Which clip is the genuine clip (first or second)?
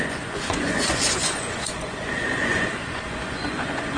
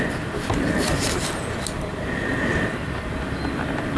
second